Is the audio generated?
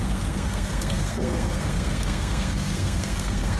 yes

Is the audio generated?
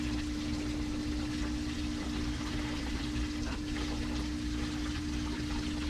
no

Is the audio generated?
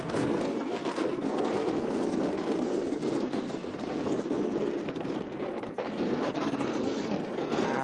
yes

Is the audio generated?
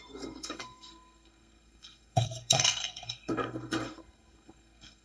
yes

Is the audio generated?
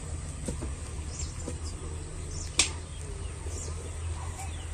no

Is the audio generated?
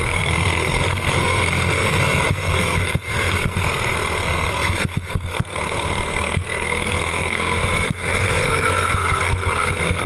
yes